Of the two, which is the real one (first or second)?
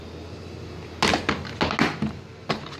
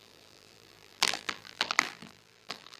first